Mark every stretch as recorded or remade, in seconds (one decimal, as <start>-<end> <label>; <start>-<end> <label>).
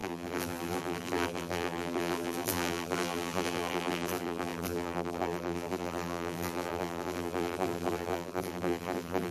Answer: 0.0-9.3 remade